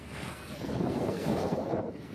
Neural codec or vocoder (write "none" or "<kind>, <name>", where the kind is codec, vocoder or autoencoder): codec, SNAC